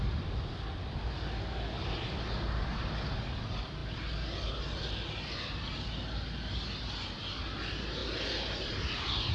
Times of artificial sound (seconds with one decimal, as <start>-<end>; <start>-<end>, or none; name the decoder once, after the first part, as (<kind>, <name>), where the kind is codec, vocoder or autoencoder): none